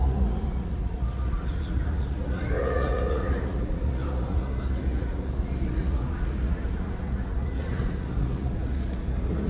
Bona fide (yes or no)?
no